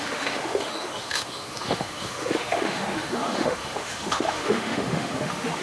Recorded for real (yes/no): no